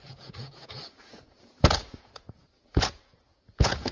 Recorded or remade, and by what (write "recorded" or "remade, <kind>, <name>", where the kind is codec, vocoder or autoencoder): remade, vocoder, Vocos